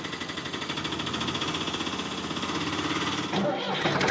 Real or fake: real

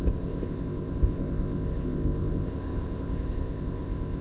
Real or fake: fake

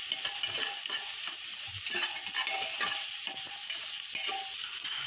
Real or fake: real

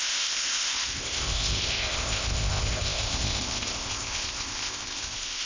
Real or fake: fake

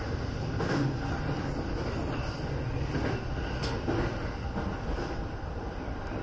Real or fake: real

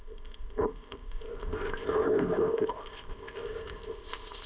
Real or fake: fake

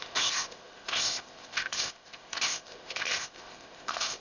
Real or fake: fake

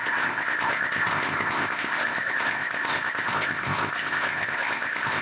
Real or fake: fake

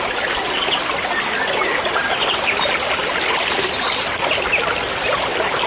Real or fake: real